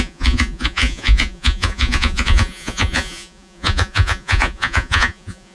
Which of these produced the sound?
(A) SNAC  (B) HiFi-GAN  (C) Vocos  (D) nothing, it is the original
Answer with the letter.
C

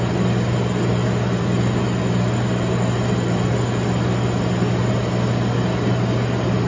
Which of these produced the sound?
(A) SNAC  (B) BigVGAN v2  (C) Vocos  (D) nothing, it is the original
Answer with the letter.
D